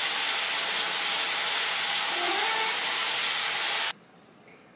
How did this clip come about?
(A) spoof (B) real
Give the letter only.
B